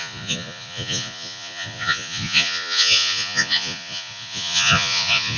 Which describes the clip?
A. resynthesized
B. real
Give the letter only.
A